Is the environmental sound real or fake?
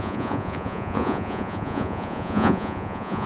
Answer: fake